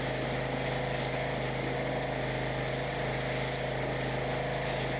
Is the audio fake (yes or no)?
no